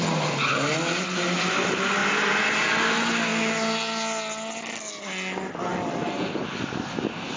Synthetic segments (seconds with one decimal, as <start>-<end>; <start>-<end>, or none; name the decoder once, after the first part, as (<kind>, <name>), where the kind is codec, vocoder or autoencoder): none